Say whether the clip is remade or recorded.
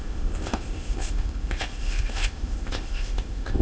remade